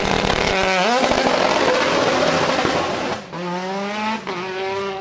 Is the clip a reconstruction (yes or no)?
no